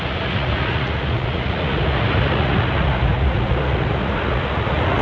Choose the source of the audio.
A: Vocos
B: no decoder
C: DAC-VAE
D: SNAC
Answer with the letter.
A